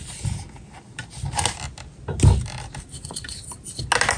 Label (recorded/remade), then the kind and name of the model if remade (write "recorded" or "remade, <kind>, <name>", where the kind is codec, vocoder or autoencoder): recorded